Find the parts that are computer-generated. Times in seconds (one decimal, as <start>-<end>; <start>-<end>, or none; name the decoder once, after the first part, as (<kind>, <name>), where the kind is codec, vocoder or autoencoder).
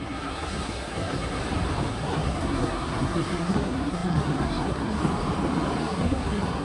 0.0-1.4 (codec, SNAC); 1.9-5.0; 5.8-6.6